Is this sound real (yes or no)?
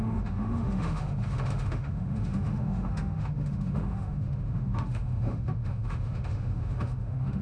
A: no